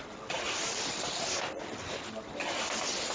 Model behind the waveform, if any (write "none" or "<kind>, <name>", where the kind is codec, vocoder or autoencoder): none